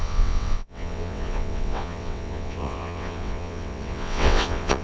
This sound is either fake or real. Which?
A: fake